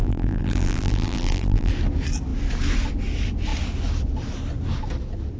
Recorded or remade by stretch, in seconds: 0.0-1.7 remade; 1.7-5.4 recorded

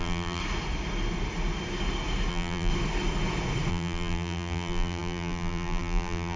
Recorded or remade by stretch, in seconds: 0.0-0.4 remade; 0.4-2.3 recorded; 2.3-2.7 remade; 2.7-3.7 recorded; 3.7-6.4 remade

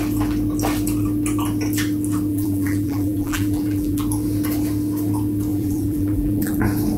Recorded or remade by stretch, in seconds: 0.0-2.3 recorded; 2.3-4.0 remade; 4.0-5.5 recorded; 5.5-6.6 remade; 6.6-7.0 recorded

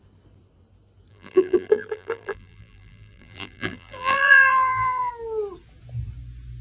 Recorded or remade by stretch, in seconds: 0.0-1.1 recorded; 1.1-5.1 remade; 5.1-6.6 recorded

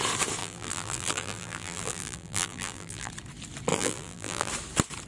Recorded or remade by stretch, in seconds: 0.0-0.4 recorded; 0.4-3.1 remade; 3.1-3.7 recorded; 3.7-4.5 remade; 4.5-5.1 recorded